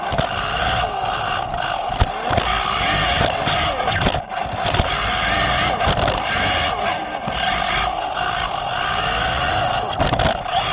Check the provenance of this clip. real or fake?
real